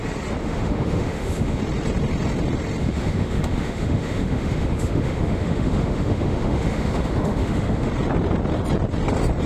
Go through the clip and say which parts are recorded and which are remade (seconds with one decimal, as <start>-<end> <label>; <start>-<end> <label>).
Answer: 0.0-0.4 recorded; 0.4-1.6 remade; 1.6-2.8 recorded; 2.8-7.9 remade; 7.9-9.5 recorded